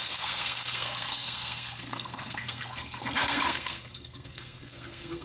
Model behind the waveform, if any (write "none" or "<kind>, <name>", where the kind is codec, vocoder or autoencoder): codec, SNAC